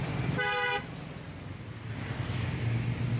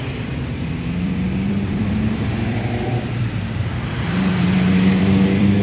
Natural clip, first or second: first